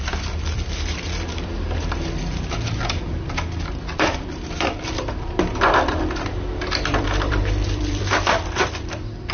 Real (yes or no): no